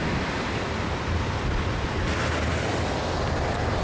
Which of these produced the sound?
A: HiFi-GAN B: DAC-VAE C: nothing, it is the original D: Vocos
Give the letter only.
C